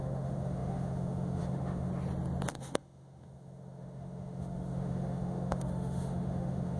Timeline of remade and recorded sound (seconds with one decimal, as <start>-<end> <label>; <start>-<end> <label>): 0.0-1.9 remade; 1.9-2.5 recorded; 2.5-6.8 remade